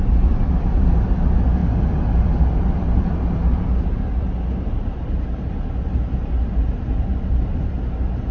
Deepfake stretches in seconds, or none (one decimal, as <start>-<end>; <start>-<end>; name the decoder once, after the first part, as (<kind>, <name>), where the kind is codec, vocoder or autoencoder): none